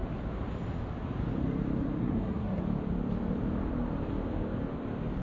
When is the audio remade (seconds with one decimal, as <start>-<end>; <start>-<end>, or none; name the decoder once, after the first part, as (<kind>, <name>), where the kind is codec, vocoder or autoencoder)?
2.0-2.6 (codec, SNAC)